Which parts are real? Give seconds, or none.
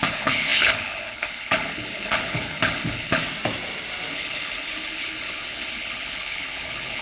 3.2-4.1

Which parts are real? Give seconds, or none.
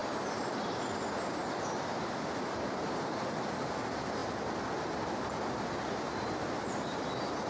0.0-7.5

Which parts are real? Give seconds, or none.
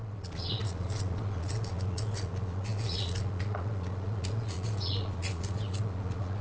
none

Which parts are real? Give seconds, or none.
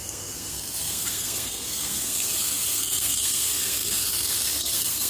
none